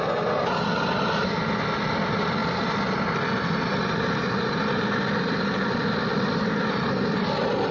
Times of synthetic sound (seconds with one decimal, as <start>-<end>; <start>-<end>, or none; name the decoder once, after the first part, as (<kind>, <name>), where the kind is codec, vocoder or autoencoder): 2.4-6.5 (vocoder, BigVGAN v2)